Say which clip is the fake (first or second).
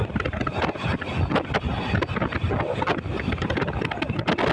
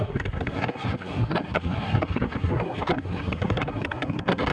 second